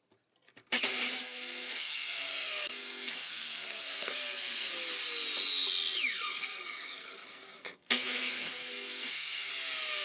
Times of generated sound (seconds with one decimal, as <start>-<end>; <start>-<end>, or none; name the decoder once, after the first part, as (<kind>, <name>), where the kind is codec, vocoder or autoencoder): 1.2-4.7 (codec, SNAC); 6.1-9.5